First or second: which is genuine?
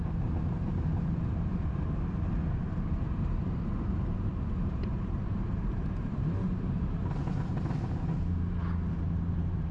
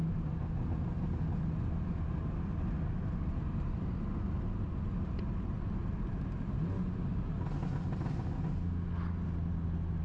second